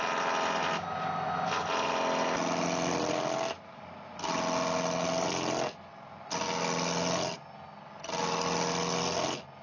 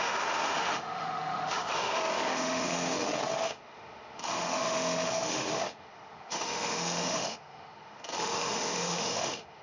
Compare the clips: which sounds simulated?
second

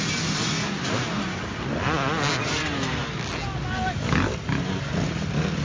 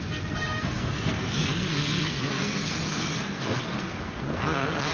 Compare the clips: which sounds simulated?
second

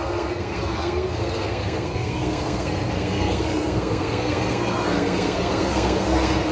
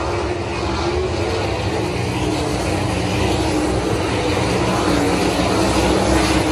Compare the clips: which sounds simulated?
first